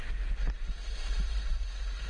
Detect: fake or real real